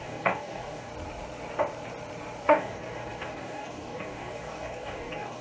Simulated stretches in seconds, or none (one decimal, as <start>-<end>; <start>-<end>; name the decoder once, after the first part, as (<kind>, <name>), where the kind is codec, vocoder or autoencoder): 0.0-0.9 (codec, DAC); 2.4-5.4